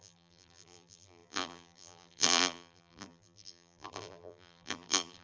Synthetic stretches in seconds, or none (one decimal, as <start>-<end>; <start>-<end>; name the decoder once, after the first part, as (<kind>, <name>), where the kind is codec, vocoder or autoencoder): 0.0-5.2 (vocoder, BigVGAN v2)